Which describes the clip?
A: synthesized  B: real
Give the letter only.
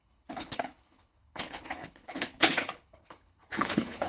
A